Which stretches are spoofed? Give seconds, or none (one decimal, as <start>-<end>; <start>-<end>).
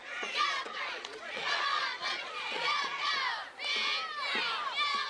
0.0-3.1